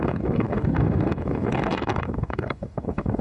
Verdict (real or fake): fake